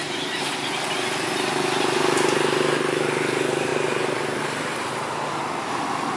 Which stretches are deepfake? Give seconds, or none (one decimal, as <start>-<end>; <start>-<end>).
none